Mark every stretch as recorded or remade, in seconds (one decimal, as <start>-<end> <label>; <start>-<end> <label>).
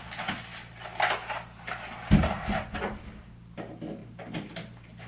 0.0-5.1 recorded